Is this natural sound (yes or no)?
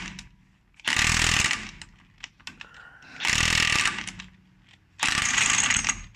yes